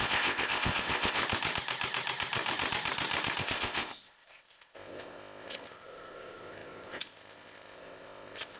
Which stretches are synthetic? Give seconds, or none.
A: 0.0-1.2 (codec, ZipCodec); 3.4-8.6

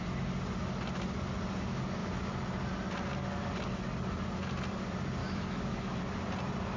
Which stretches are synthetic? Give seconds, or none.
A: 5.2-6.0 (autoencoder, DAC-VAE)

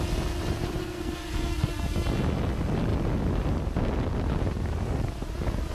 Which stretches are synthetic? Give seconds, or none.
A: 0.8-1.7 (codec, SNAC)

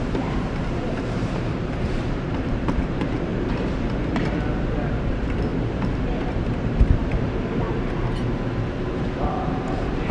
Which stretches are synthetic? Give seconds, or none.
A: 0.0-3.3 (vocoder, BigVGAN v2); 5.1-10.1